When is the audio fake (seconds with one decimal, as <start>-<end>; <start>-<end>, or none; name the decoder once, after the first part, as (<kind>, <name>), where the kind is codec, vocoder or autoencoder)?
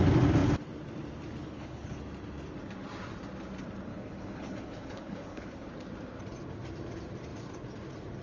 1.4-2.0 (codec, HILCodec); 3.9-5.7